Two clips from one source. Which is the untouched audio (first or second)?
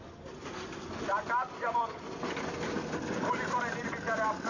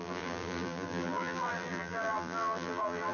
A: first